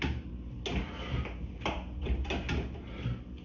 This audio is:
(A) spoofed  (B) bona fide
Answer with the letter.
B